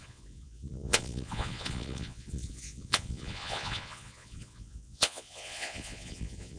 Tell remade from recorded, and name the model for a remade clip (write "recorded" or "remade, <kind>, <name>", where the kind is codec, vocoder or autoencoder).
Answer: remade, vocoder, Vocos